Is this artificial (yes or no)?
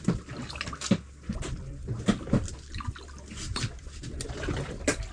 no